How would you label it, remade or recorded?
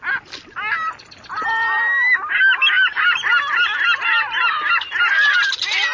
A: recorded